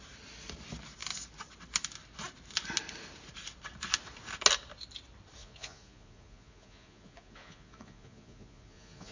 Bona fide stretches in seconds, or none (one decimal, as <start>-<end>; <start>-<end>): 0.0-5.4